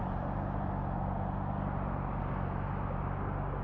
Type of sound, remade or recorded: recorded